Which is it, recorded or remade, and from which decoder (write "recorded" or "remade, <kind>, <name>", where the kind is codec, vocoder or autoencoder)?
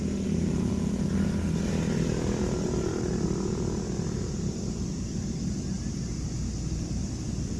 remade, vocoder, BigVGAN v2